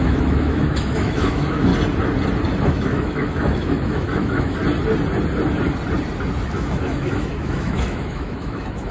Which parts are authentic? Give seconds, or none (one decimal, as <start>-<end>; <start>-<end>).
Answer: 1.7-2.7; 4.6-6.5